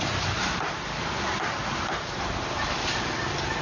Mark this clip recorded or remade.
recorded